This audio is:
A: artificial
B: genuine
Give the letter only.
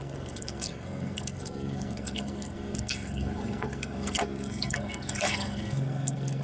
A